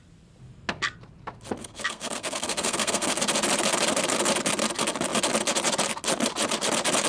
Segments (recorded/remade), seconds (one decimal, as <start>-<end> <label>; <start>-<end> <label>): 0.0-1.6 recorded; 1.6-3.2 remade; 3.2-7.1 recorded

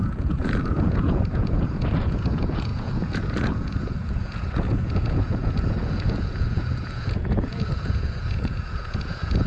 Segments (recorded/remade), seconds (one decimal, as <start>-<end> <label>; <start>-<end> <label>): 0.0-9.5 remade

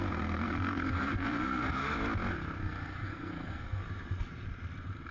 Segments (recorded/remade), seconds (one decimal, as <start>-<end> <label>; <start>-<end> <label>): 0.0-1.8 remade; 1.8-2.6 recorded; 2.6-3.8 remade; 3.8-5.1 recorded